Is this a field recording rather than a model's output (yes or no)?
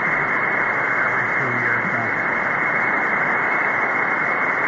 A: yes